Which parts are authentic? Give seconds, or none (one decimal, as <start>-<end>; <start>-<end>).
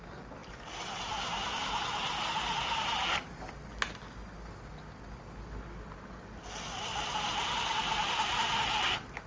0.0-9.3